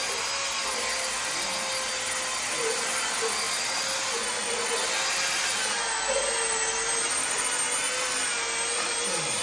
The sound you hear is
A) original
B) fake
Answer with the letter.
A